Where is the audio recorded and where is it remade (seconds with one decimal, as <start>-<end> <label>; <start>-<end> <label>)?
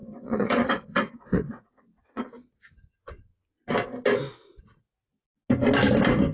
0.0-2.2 remade; 2.2-6.3 recorded